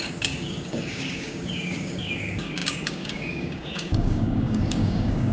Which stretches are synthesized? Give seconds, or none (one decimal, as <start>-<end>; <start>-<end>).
0.0-5.3